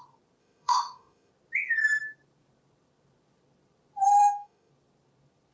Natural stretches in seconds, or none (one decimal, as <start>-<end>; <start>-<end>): 0.0-0.4; 1.3-4.2; 4.7-5.5